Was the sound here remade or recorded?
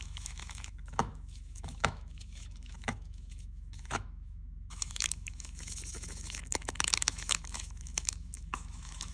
remade